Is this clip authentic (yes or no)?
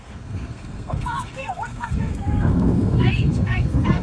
no